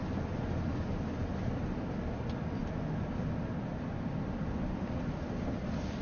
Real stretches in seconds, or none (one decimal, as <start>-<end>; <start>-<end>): 2.6-3.8